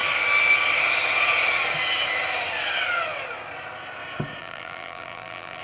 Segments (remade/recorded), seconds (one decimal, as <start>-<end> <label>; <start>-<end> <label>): 0.0-4.4 recorded; 4.4-5.6 remade